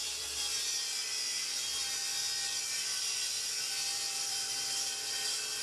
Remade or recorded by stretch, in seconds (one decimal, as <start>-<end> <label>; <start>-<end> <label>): 0.0-5.6 remade